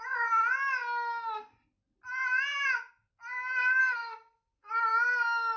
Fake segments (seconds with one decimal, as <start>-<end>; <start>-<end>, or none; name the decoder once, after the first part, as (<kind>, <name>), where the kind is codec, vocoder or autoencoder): 3.8-4.7 (codec, SNAC)